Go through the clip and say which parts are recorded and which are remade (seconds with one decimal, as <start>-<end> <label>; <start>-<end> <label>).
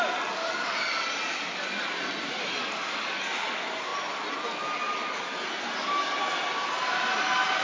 0.0-7.6 recorded